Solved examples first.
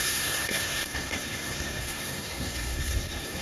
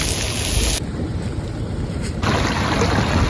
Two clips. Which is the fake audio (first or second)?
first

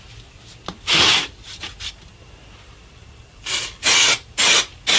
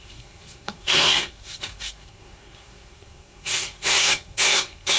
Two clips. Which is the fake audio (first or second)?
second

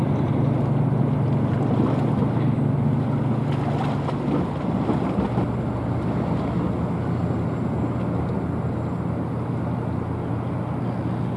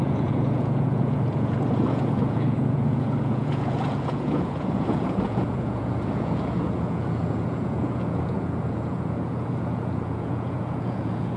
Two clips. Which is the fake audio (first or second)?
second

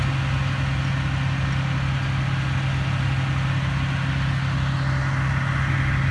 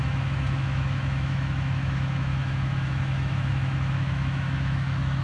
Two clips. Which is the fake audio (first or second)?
second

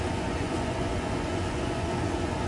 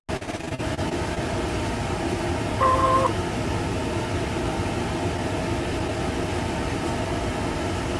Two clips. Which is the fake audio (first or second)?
first